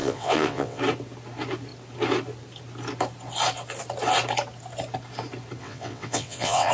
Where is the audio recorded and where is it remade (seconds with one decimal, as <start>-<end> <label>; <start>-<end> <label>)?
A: 0.0-0.8 remade; 0.8-5.6 recorded; 5.6-6.7 remade